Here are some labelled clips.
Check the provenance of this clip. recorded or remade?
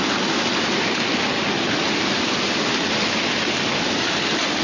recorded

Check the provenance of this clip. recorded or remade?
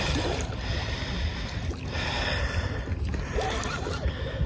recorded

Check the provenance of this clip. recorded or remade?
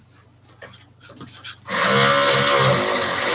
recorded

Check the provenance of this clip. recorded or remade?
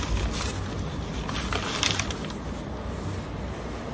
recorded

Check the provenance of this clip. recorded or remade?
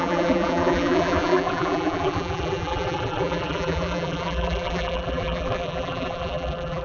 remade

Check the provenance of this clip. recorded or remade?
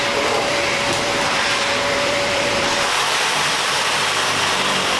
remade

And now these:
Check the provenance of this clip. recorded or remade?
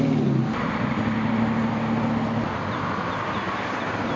recorded